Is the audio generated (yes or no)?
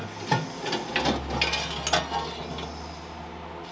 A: no